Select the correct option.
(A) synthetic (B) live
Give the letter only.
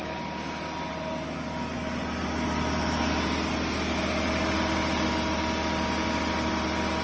B